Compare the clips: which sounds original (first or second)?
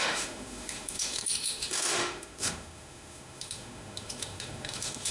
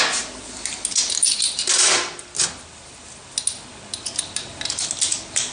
second